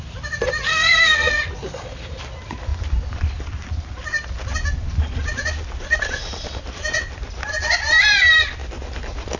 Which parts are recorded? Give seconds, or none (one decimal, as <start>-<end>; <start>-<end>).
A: 0.0-0.7; 1.4-9.4